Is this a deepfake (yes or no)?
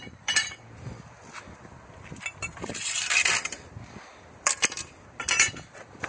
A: yes